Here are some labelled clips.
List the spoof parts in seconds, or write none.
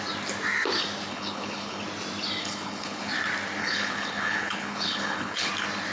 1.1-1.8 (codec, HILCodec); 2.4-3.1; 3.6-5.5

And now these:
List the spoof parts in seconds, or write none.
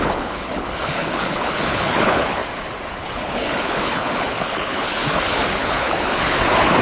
0.0-2.4 (codec, HILCodec); 2.9-6.8